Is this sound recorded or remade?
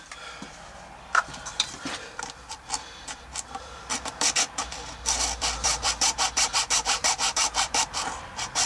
remade